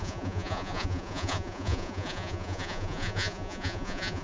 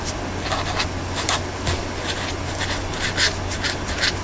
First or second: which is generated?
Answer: first